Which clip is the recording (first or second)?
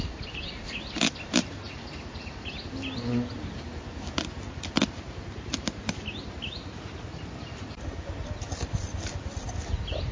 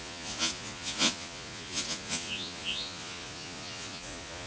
first